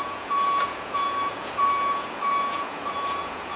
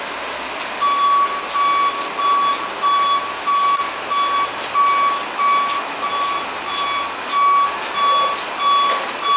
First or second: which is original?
second